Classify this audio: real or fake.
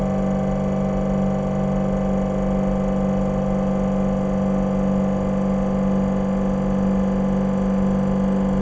real